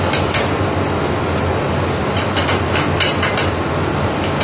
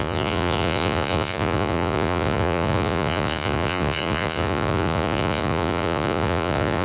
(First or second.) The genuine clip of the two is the first